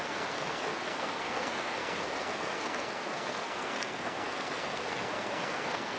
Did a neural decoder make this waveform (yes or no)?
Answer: yes